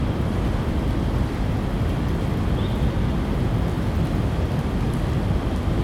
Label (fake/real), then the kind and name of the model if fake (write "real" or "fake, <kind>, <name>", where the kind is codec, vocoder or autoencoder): real